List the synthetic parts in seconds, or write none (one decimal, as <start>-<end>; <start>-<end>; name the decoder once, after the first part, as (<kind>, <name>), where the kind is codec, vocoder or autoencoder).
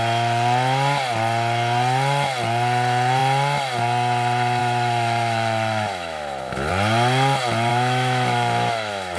4.6-6.7 (autoencoder, DAC-VAE); 7.7-9.2